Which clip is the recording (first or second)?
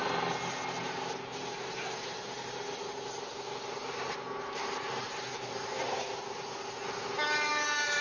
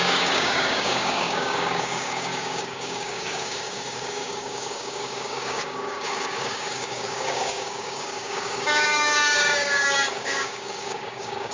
first